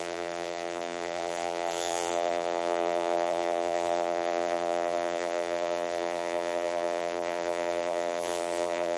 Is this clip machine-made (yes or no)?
yes